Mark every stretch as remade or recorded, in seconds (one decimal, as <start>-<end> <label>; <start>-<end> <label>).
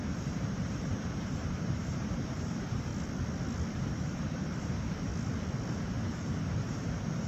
0.0-2.9 remade; 2.9-3.7 recorded; 3.7-5.1 remade; 5.1-5.7 recorded; 5.7-7.3 remade